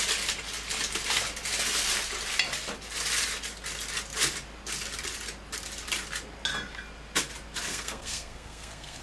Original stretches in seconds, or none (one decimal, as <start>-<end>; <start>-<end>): 0.0-7.7